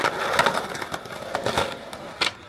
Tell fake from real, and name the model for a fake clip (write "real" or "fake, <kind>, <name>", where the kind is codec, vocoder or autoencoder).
real